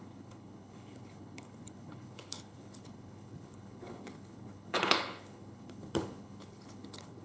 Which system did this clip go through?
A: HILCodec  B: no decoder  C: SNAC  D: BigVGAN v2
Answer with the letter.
A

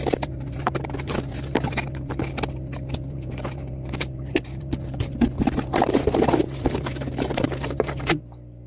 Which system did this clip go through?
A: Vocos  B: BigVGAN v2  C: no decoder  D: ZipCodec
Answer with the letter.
B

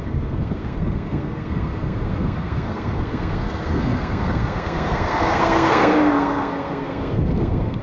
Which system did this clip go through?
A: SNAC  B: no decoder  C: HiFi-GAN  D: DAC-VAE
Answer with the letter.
A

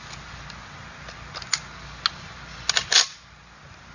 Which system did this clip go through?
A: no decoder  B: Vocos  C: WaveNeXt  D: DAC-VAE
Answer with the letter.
A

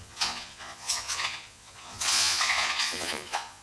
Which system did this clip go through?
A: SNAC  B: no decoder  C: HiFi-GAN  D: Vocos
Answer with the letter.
D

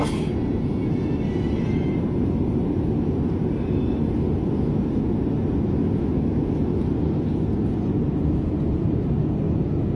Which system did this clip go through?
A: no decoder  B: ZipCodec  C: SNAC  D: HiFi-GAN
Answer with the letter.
A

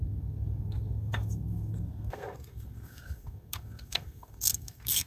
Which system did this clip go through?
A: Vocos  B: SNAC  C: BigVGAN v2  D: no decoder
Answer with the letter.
B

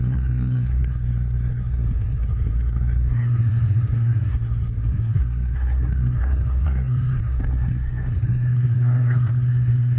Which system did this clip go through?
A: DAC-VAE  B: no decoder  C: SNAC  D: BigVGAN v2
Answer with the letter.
C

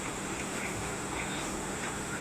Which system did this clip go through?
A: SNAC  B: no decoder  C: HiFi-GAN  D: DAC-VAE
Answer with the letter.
D